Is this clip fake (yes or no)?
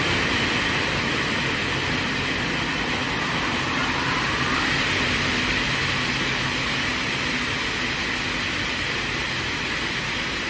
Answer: no